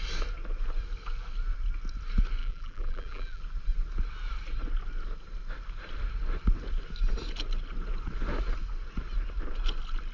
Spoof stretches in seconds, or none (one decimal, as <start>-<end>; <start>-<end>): 2.4-3.4

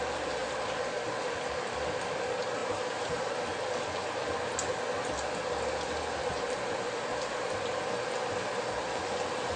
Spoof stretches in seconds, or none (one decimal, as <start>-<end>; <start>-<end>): 0.4-0.9; 2.6-3.4; 6.2-7.6

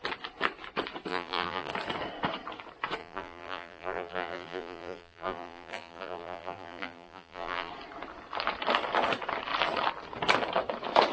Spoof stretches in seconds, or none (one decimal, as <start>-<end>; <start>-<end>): 1.1-1.7; 3.0-7.7

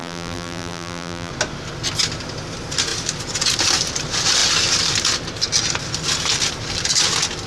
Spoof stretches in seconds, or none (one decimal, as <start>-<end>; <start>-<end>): 0.0-1.3

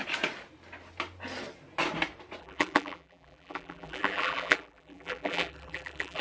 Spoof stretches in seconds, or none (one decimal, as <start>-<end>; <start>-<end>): 2.4-6.2

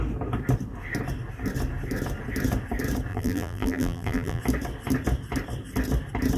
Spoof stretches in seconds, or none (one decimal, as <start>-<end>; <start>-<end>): 3.1-4.4